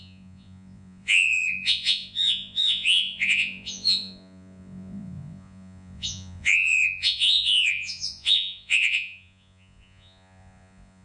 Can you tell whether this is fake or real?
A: fake